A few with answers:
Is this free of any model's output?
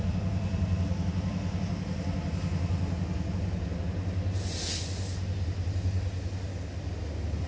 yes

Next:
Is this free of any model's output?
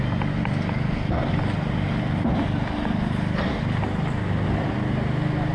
yes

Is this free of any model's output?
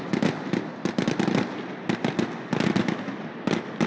yes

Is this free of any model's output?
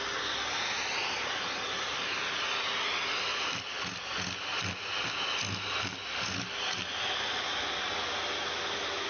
yes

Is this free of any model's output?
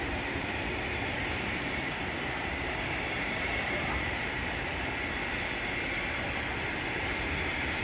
no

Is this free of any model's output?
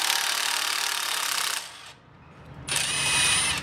yes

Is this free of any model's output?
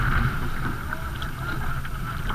yes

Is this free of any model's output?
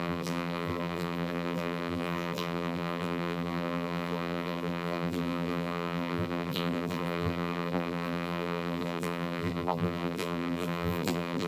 no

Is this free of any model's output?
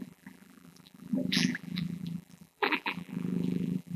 no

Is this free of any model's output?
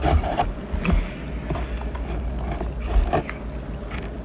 yes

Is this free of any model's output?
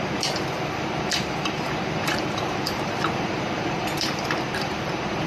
no